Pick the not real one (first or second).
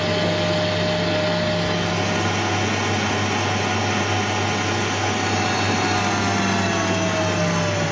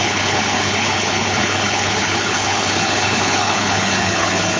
second